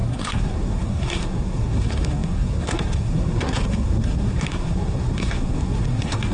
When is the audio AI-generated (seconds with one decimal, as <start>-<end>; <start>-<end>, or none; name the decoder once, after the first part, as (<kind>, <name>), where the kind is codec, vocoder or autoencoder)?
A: 0.0-6.3 (codec, SNAC)